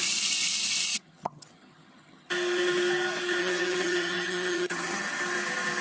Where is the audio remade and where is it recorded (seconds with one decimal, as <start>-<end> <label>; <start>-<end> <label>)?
0.0-0.9 recorded; 0.9-2.3 remade; 2.3-3.4 recorded; 3.4-5.0 remade; 5.0-5.8 recorded